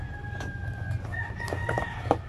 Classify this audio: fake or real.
real